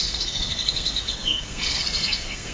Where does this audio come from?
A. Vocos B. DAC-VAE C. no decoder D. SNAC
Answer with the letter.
D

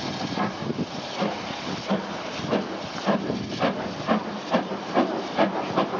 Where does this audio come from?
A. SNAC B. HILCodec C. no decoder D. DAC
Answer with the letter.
C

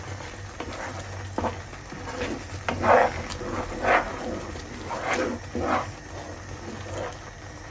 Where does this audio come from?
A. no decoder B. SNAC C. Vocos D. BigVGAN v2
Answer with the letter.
A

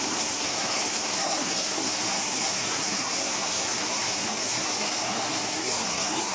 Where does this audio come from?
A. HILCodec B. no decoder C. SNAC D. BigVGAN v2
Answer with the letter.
C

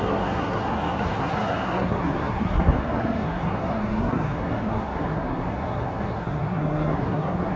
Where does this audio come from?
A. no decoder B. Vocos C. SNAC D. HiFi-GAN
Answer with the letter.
C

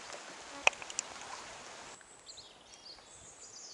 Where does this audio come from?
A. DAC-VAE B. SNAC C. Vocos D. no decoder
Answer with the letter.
D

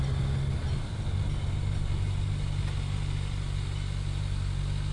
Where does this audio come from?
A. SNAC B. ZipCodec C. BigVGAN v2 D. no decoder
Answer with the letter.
D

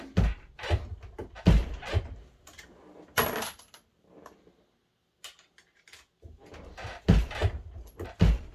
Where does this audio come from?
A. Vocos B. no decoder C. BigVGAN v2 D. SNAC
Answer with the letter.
B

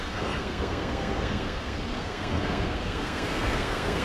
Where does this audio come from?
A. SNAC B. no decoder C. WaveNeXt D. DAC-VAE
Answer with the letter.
A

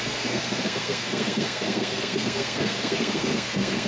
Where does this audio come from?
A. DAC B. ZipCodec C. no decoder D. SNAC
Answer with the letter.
D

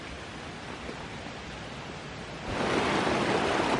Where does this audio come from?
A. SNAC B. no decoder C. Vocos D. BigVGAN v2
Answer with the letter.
B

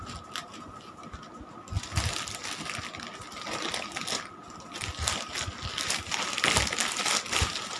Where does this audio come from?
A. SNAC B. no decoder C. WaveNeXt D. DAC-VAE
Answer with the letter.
B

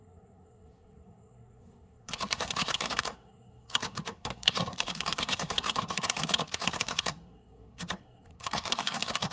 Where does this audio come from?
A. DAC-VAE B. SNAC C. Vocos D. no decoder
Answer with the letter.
B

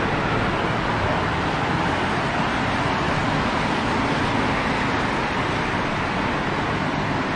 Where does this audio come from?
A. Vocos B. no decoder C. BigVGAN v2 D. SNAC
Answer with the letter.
B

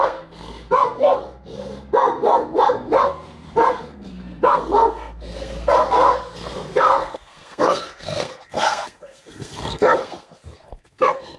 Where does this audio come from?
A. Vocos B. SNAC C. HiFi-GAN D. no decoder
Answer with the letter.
B